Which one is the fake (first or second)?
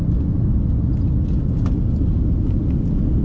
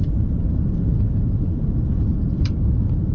second